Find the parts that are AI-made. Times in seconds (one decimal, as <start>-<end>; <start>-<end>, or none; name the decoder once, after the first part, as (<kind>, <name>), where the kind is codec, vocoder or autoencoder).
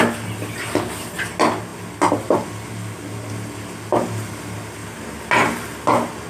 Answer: none